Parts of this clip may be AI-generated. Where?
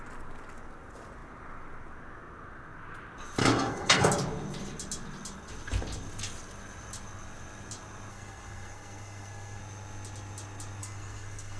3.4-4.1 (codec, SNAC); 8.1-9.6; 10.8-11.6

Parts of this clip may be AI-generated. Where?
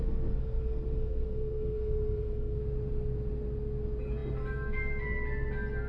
0.4-2.6 (codec, SNAC)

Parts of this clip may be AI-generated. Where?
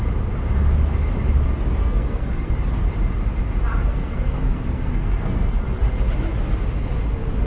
1.8-2.5 (codec, SNAC); 3.8-5.6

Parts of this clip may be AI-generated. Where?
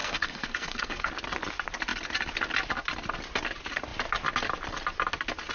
0.0-1.1 (codec, SNAC)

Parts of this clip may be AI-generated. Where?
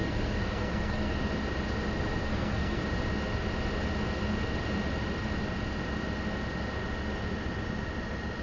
0.0-1.1 (codec, SNAC); 2.2-2.8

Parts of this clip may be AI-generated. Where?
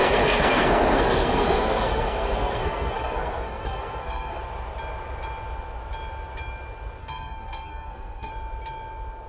0.0-4.4 (codec, SNAC); 7.0-8.3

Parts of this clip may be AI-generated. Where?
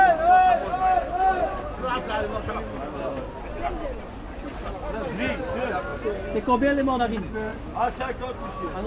none